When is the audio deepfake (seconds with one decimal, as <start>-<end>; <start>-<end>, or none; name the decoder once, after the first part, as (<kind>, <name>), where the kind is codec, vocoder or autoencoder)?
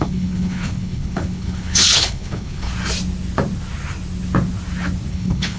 0.0-2.7 (codec, HILCodec); 5.1-5.6